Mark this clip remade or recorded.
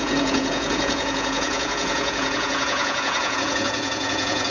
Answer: remade